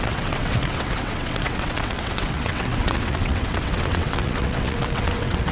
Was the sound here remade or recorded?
remade